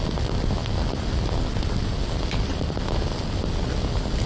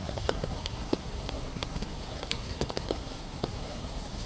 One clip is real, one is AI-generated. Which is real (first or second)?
first